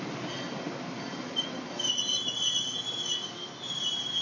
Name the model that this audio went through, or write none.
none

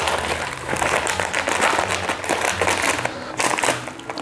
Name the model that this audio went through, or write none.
none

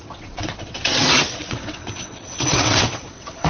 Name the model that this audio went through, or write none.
vocoder, WaveNeXt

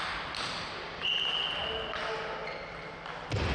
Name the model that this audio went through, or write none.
none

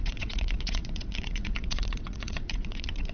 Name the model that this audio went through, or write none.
vocoder, WaveNeXt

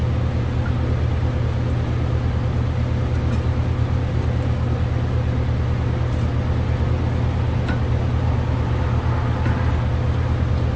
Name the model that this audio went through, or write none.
none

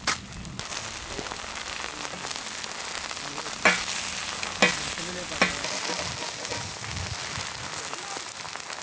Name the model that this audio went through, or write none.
none